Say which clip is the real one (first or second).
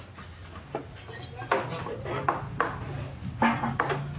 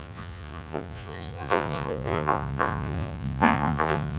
first